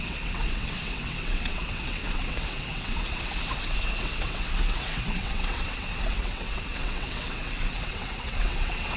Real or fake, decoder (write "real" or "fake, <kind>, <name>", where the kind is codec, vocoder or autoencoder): fake, vocoder, WaveNeXt